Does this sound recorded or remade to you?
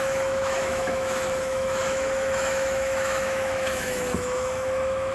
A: remade